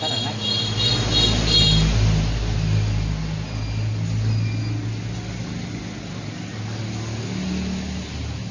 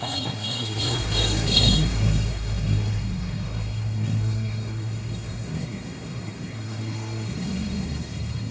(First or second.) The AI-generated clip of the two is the second